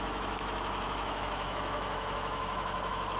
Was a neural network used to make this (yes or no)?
yes